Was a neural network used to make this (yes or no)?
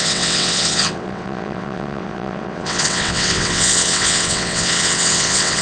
yes